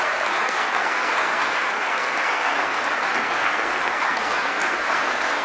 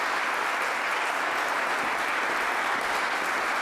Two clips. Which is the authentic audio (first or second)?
second